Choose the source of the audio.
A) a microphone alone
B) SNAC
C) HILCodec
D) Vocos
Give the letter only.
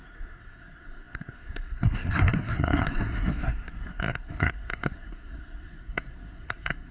B